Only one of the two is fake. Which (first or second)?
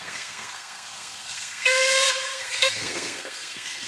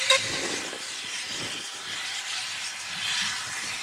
first